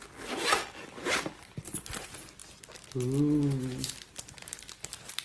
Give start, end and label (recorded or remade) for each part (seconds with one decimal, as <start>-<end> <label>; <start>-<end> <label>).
0.0-0.6 recorded; 0.6-1.6 remade; 1.6-5.2 recorded